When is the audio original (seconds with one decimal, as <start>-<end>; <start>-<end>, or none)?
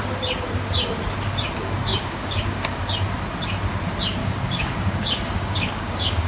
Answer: 0.0-1.9; 2.8-4.2